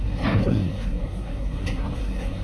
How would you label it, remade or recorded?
remade